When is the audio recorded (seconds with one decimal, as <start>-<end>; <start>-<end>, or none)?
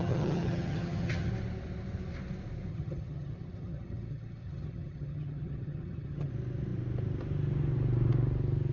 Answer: 1.3-2.7; 6.3-8.7